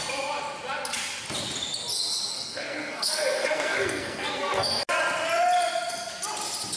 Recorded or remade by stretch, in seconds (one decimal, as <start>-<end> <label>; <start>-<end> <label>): 0.0-2.3 recorded; 2.3-4.8 remade; 4.8-6.8 recorded